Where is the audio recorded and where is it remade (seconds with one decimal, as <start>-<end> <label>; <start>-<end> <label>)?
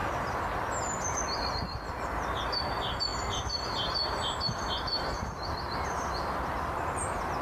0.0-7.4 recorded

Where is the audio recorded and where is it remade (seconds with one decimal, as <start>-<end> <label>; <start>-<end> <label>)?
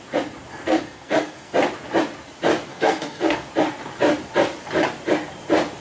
0.0-0.5 recorded; 0.5-1.5 remade; 1.5-2.7 recorded; 2.7-3.5 remade; 3.5-5.8 recorded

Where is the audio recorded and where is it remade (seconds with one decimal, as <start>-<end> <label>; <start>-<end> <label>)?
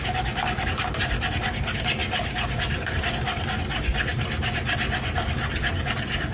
0.0-6.3 recorded